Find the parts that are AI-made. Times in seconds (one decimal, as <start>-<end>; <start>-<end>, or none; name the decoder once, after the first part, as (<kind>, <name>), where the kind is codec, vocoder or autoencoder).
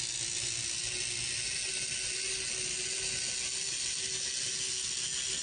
none